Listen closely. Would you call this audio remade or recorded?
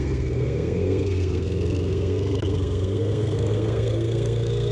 remade